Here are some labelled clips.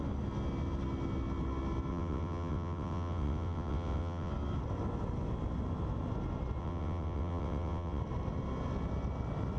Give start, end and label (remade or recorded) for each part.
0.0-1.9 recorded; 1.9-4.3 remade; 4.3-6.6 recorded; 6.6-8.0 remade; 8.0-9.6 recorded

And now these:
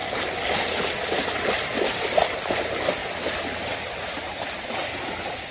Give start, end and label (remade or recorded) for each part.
0.0-5.5 recorded

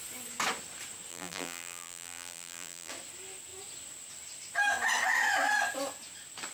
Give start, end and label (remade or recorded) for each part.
0.0-1.1 recorded; 1.1-2.9 remade; 2.9-6.5 recorded

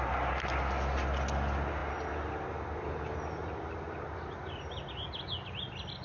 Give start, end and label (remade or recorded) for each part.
0.0-6.0 recorded

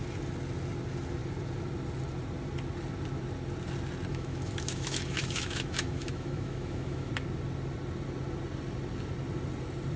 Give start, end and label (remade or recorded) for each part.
0.0-4.1 recorded; 4.1-7.1 remade; 7.1-10.0 recorded